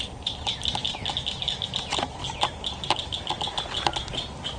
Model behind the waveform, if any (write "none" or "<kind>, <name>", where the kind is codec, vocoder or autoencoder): none